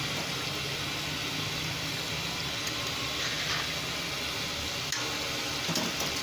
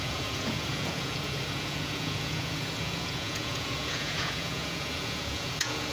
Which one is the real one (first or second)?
first